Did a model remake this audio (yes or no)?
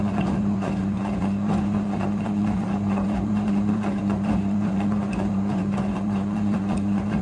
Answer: yes